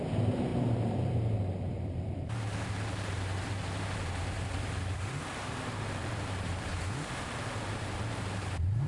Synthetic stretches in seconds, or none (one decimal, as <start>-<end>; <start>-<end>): 0.0-6.7; 7.3-8.9